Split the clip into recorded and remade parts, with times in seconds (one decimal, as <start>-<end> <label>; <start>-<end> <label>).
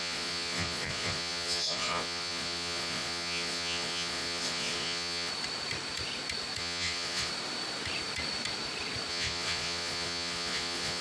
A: 0.0-5.3 remade; 5.3-6.6 recorded; 6.6-7.3 remade; 7.3-9.1 recorded; 9.1-11.0 remade